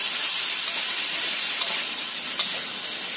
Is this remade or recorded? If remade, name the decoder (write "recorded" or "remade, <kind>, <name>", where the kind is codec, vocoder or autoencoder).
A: recorded